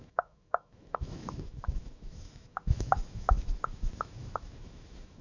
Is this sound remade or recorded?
remade